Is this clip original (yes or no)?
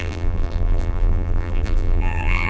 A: no